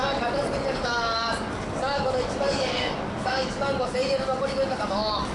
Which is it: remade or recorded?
remade